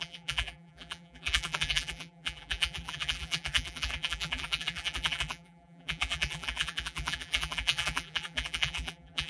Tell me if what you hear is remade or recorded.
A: remade